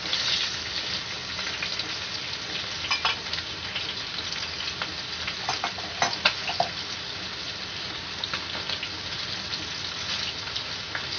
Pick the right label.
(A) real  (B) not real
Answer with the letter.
A